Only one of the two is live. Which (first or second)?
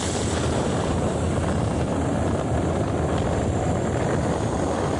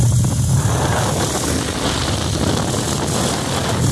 second